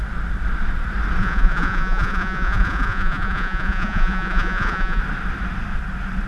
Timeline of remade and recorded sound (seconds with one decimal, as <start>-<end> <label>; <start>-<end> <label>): 0.0-1.2 recorded; 1.2-5.0 remade; 5.0-6.3 recorded